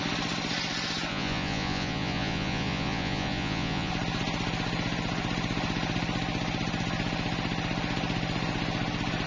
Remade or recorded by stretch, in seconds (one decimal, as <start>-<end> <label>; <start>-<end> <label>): 0.0-1.1 recorded; 1.1-3.9 remade; 3.9-9.3 recorded